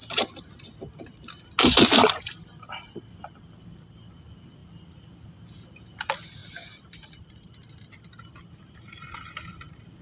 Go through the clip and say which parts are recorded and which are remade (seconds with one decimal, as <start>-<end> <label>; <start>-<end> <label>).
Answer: 0.0-1.6 recorded; 1.6-4.1 remade; 4.1-4.6 recorded; 4.6-5.2 remade; 5.2-6.4 recorded; 6.4-8.5 remade; 8.5-10.0 recorded